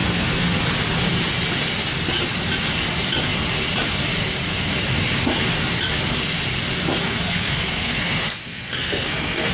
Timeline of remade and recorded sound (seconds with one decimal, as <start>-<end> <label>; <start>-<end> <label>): 0.0-0.5 remade; 0.5-7.0 recorded; 7.0-9.5 remade